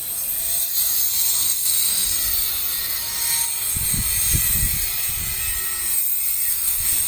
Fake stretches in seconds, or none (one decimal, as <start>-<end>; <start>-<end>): 1.3-2.1; 6.5-7.1